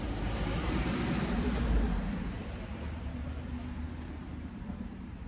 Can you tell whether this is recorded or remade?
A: remade